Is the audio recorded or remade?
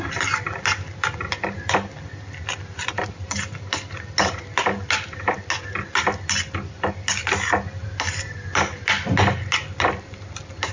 recorded